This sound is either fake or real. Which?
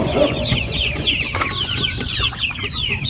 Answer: fake